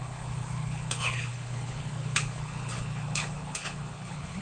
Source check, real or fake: fake